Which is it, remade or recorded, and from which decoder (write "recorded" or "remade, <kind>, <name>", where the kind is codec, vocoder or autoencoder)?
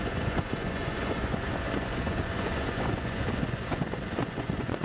remade, vocoder, Vocos